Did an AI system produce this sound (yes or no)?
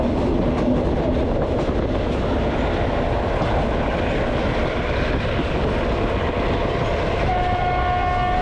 no